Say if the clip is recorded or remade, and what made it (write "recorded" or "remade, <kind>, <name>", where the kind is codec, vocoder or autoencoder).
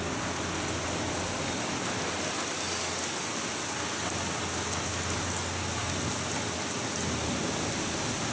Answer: recorded